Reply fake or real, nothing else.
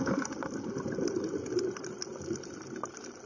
real